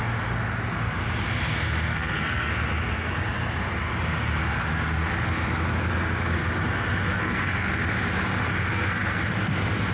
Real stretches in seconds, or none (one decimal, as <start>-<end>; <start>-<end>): 0.0-1.9; 2.5-7.1; 7.7-8.7; 9.2-9.9